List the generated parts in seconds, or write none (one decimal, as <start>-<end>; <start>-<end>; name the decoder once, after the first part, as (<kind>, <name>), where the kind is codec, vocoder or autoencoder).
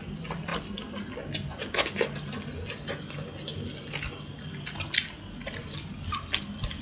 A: none